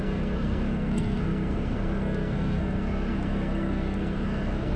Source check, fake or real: fake